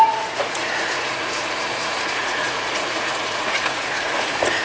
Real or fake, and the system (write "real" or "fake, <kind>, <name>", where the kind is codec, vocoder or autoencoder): fake, vocoder, Vocos